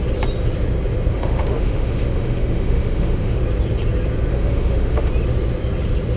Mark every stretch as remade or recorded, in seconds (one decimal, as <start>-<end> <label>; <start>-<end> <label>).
0.0-1.1 recorded; 1.1-3.4 remade; 3.4-4.3 recorded; 4.3-5.1 remade; 5.1-6.2 recorded